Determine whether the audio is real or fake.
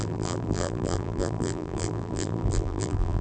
fake